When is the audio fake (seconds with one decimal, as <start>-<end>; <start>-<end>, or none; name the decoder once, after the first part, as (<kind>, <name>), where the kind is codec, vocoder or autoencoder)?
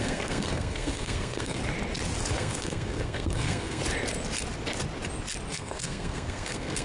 0.0-1.6 (codec, SNAC); 2.3-3.8; 5.5-6.8